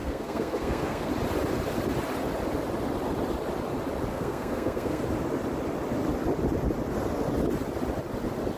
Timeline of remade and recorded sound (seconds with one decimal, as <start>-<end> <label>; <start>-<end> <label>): 0.0-1.1 remade; 1.1-4.1 recorded; 4.1-5.0 remade; 5.0-8.6 recorded